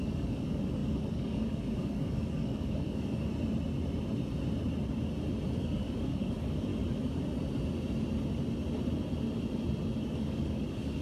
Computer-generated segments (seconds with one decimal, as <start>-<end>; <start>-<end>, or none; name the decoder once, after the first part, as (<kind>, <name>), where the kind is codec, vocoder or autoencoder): 0.0-3.3 (codec, DAC); 5.6-6.7; 10.0-11.0